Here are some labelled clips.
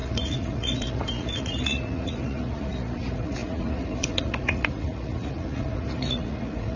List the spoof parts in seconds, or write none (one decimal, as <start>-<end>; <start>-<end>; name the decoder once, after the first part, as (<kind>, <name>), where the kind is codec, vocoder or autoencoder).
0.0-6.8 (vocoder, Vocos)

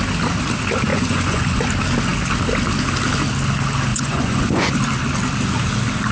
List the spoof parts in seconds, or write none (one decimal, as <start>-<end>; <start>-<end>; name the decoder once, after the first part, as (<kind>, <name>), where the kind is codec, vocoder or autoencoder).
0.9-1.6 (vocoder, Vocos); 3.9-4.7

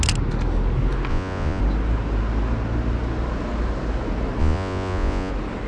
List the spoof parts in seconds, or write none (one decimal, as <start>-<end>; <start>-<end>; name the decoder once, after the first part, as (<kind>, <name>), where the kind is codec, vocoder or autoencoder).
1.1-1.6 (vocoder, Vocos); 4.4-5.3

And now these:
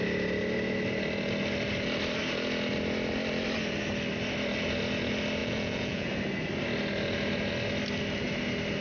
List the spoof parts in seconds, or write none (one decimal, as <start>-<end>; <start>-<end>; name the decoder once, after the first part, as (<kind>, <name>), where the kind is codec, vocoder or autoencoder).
5.4-6.1 (vocoder, Vocos)

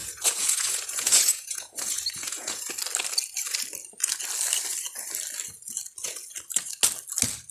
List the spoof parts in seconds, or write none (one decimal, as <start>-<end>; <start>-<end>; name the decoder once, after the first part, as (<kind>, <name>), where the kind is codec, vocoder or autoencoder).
0.0-2.7 (vocoder, Vocos)

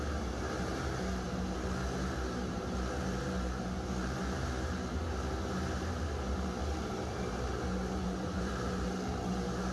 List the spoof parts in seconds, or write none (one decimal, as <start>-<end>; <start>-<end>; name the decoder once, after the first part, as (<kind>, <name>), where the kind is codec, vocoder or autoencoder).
8.0-8.5 (vocoder, Vocos)

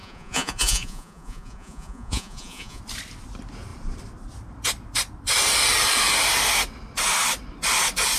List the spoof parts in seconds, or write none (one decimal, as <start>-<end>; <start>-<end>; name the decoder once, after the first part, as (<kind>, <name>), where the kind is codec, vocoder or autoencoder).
0.0-2.8 (vocoder, Vocos)